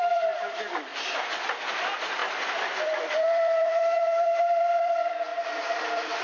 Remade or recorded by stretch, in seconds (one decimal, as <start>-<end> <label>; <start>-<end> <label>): 0.0-0.9 remade; 0.9-1.7 recorded; 1.7-6.2 remade